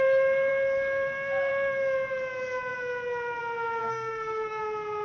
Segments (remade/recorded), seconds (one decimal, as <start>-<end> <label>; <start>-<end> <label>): 0.0-3.8 recorded; 3.8-4.6 remade; 4.6-5.0 recorded